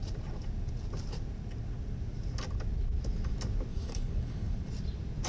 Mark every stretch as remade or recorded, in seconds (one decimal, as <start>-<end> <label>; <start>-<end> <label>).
0.0-3.7 recorded; 3.7-4.6 remade; 4.6-5.3 recorded